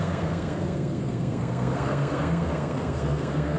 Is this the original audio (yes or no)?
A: no